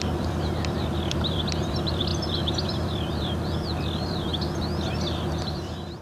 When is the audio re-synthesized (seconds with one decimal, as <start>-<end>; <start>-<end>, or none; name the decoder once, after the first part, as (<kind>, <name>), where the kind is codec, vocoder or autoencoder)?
0.0-4.3 (vocoder, BigVGAN v2); 5.4-6.0